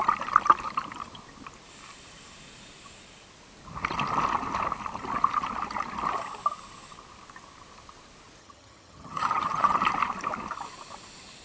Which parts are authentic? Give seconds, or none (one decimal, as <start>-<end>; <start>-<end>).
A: 0.0-8.4; 9.8-11.4